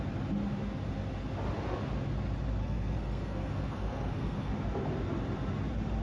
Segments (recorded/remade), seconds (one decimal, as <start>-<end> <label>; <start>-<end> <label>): 0.0-2.6 recorded; 2.6-4.5 remade; 4.5-6.0 recorded

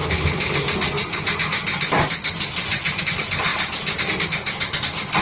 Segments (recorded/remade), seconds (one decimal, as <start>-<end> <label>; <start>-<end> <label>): 0.0-3.5 recorded; 3.5-4.8 remade; 4.8-5.2 recorded

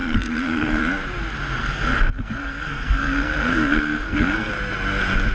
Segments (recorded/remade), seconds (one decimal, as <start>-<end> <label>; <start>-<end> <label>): 0.0-0.8 remade; 0.8-1.6 recorded; 1.6-4.5 remade; 4.5-5.3 recorded

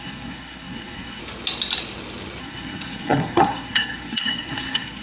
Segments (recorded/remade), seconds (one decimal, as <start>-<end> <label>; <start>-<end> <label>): 0.0-1.2 remade; 1.2-2.4 recorded; 2.4-5.0 remade

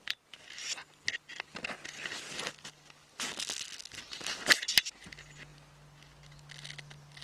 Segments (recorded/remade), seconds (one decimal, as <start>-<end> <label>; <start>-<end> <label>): 0.0-7.2 recorded

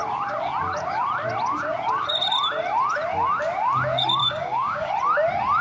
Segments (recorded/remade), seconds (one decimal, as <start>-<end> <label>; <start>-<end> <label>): 0.0-4.2 recorded; 4.2-4.9 remade; 4.9-5.6 recorded

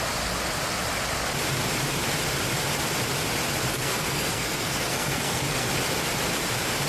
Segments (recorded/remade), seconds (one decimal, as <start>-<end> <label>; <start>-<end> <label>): 0.0-3.7 recorded; 3.7-5.7 remade; 5.7-6.9 recorded

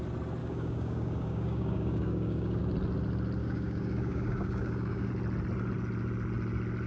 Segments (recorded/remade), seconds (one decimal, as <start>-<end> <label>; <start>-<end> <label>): 0.0-0.4 recorded; 0.4-2.6 remade; 2.6-3.4 recorded; 3.4-5.1 remade; 5.1-6.9 recorded